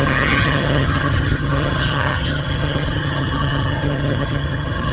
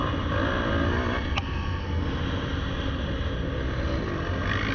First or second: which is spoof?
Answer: first